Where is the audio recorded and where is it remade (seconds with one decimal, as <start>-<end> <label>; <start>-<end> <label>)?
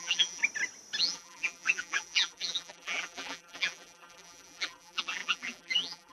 0.0-0.4 remade; 0.4-1.0 recorded; 1.0-6.1 remade